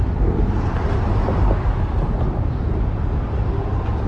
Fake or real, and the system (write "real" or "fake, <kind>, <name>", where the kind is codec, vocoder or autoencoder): real